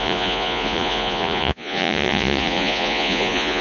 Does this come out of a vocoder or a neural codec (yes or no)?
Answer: yes